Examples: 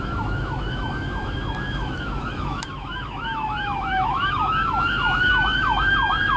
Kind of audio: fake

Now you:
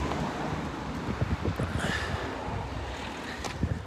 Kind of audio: real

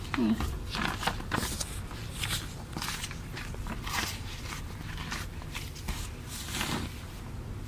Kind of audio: real